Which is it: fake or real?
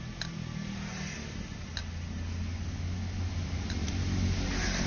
real